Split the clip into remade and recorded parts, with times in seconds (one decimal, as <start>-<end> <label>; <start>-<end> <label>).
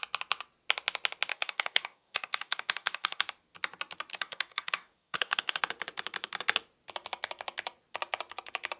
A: 0.0-1.3 recorded; 1.3-3.2 remade; 3.2-4.1 recorded; 4.1-5.6 remade; 5.6-8.8 recorded